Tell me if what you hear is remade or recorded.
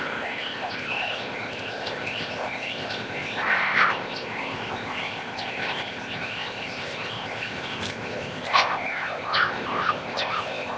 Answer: remade